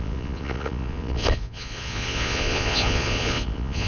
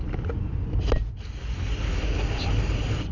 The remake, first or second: first